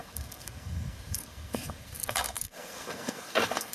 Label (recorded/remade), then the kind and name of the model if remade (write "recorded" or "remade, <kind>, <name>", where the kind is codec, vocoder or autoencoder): remade, codec, SNAC